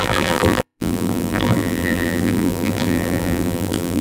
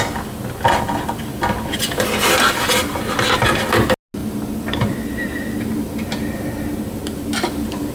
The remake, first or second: first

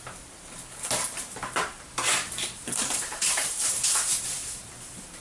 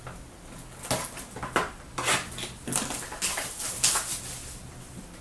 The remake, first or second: first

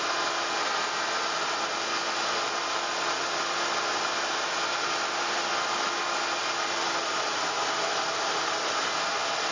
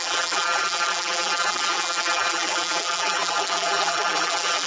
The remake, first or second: second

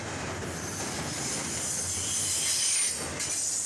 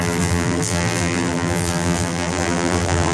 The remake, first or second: second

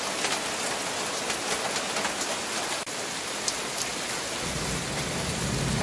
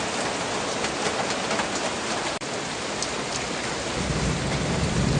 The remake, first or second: second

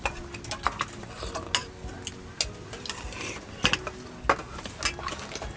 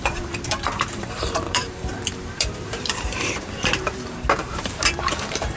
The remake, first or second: second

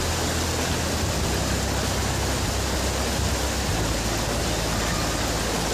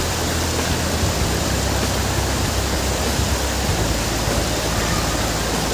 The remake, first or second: second